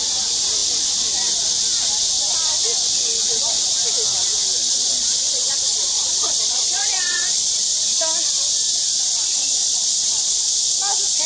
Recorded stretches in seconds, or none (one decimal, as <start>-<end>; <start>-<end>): 0.0-4.6; 7.6-9.6; 10.3-11.3